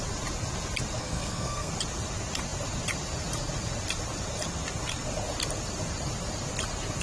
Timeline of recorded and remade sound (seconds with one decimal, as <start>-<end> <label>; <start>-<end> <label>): 0.0-1.0 recorded; 1.0-1.7 remade; 1.7-7.0 recorded